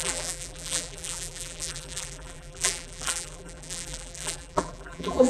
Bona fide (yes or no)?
no